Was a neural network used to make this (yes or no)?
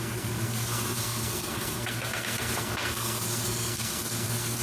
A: yes